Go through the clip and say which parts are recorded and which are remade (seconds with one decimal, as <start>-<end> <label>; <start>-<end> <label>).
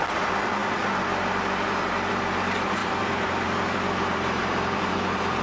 0.0-0.6 recorded; 0.6-2.1 remade; 2.1-2.8 recorded; 2.8-4.9 remade; 4.9-5.4 recorded